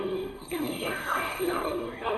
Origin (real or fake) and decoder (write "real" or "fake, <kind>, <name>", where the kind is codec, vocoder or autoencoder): fake, codec, SNAC